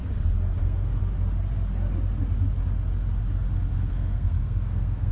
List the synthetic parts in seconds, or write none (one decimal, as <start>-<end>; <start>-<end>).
0.6-1.0; 3.9-5.1